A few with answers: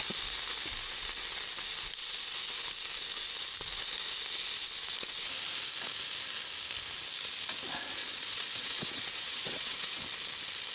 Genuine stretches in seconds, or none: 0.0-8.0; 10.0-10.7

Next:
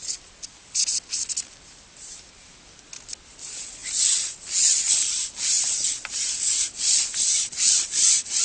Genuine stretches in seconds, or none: 0.0-8.4

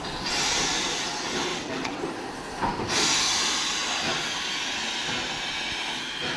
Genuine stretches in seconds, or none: 0.0-1.5; 2.0-6.4